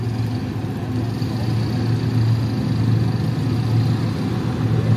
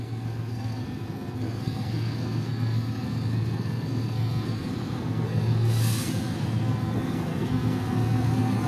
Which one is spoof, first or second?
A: second